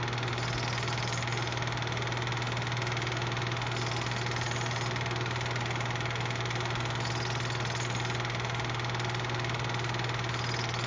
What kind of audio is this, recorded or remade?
recorded